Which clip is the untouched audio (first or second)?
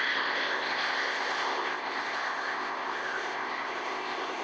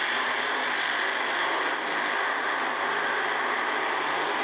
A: second